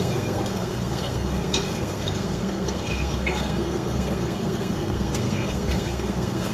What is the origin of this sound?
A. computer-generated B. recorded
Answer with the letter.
A